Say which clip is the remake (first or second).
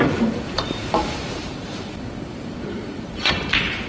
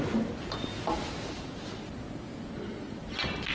first